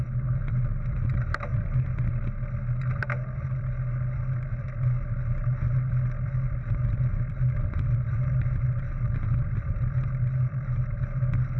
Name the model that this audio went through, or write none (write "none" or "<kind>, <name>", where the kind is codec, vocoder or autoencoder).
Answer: none